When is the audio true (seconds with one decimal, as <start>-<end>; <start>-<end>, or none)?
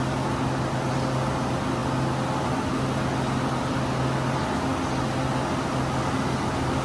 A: 0.0-6.8